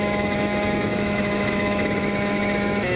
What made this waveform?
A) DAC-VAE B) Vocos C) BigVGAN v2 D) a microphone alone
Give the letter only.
A